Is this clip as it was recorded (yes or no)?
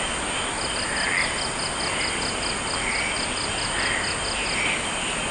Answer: yes